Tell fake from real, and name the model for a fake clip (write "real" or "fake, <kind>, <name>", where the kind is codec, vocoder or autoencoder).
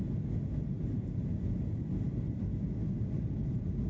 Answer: real